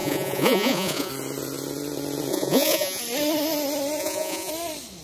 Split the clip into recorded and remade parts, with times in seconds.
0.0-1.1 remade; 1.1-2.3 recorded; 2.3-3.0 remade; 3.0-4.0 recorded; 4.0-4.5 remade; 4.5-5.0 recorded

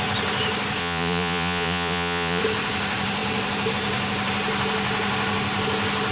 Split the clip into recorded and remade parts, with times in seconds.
0.0-0.8 recorded; 0.8-2.4 remade; 2.4-6.1 recorded

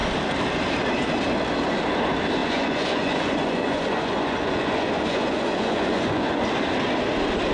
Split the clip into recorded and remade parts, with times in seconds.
0.0-2.4 recorded; 2.4-6.4 remade; 6.4-7.5 recorded

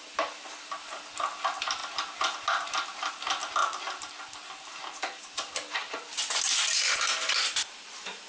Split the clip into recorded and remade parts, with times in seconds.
0.0-8.3 recorded

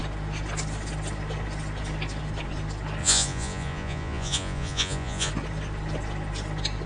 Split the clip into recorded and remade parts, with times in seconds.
0.0-3.0 recorded; 3.0-5.3 remade; 5.3-6.9 recorded

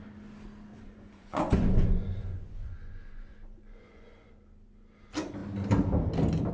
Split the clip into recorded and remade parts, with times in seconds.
0.0-0.7 recorded; 0.7-4.3 remade; 4.3-6.5 recorded